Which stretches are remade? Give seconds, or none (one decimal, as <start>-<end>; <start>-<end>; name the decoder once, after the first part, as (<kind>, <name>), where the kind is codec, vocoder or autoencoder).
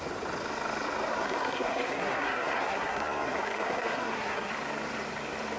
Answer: 1.1-4.5 (codec, SNAC)